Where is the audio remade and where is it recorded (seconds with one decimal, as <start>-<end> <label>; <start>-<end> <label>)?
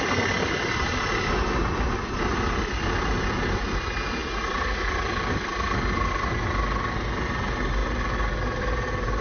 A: 0.0-9.2 recorded